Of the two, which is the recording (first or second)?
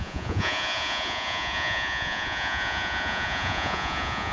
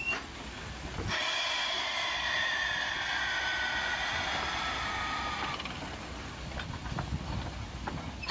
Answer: second